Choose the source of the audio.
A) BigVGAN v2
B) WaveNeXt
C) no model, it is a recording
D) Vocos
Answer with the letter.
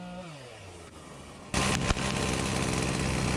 C